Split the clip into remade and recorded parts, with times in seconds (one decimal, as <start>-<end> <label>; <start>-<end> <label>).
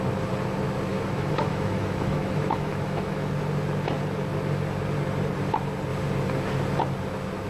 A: 0.0-0.9 recorded; 0.9-3.3 remade; 3.3-7.5 recorded